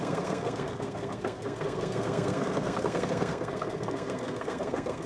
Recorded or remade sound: remade